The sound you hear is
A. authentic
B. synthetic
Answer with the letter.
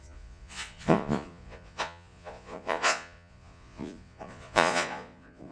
B